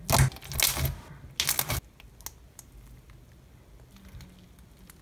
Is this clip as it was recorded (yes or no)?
yes